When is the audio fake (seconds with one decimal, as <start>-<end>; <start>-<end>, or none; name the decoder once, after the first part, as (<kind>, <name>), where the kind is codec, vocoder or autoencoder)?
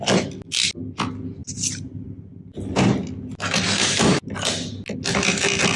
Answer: none